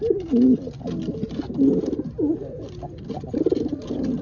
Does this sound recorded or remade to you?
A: recorded